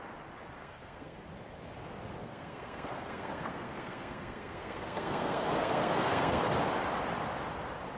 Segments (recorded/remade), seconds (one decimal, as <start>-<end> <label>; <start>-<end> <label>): 0.0-0.6 recorded; 0.6-1.2 remade; 1.2-2.2 recorded; 2.2-6.5 remade; 6.5-8.0 recorded